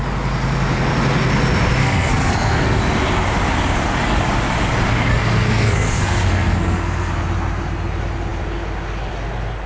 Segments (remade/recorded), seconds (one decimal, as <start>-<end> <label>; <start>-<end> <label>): 0.0-1.8 recorded; 1.8-2.8 remade; 2.8-5.1 recorded; 5.1-7.1 remade; 7.1-9.7 recorded